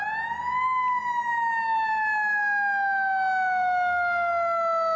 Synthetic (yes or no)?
no